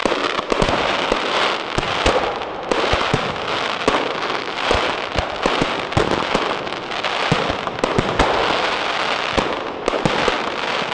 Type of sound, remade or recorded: recorded